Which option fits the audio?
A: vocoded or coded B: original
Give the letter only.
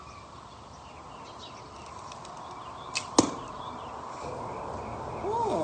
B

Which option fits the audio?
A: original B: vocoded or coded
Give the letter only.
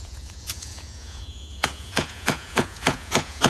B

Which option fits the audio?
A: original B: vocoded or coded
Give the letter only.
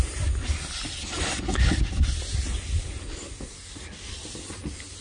A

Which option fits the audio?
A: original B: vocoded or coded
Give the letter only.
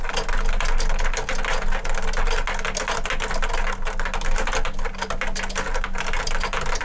A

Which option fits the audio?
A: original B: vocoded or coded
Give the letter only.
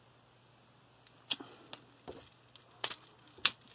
A